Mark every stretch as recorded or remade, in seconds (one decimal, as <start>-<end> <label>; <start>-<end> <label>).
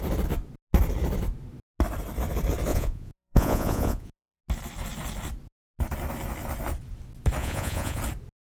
0.0-2.7 recorded; 2.7-4.4 remade; 4.4-7.4 recorded; 7.4-8.0 remade; 8.0-8.5 recorded